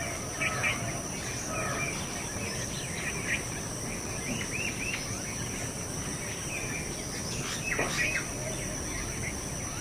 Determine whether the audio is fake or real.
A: real